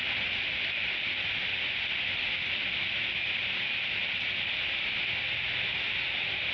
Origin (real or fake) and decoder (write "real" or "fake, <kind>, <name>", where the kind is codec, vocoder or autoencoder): real